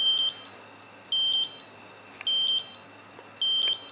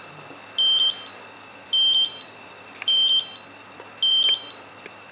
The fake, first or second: second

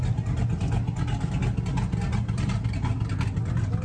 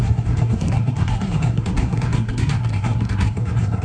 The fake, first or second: second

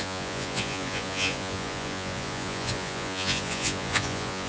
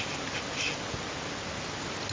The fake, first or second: first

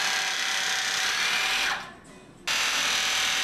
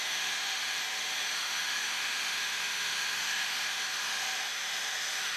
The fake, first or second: second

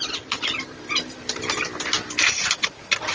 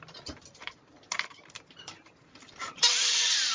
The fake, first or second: second